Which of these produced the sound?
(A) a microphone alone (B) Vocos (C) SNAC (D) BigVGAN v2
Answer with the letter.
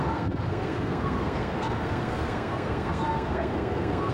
C